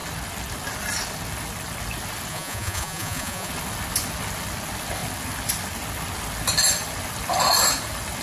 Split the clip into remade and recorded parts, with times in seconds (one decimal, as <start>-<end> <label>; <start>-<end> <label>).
0.0-2.3 recorded; 2.3-3.5 remade; 3.5-8.2 recorded